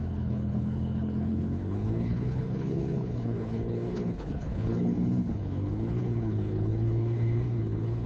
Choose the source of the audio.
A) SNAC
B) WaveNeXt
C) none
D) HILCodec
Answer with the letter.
D